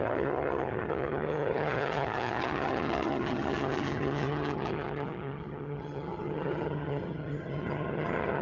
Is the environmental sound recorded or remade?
remade